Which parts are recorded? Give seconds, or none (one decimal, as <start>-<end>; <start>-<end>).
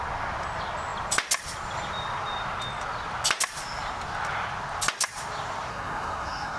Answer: 0.0-5.7